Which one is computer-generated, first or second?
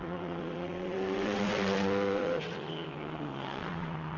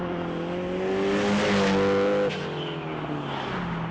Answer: first